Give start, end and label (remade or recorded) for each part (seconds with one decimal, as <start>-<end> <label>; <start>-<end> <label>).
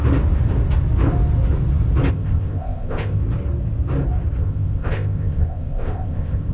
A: 0.0-2.1 recorded; 2.1-3.2 remade; 3.2-4.4 recorded; 4.4-6.5 remade